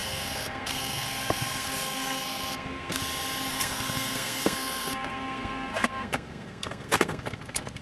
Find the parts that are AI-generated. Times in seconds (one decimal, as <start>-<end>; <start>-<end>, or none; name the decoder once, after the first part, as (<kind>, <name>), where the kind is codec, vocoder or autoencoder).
0.0-3.0 (codec, SNAC); 3.5-7.8